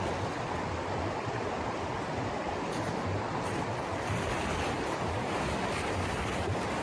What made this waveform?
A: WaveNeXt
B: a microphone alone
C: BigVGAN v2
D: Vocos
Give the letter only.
B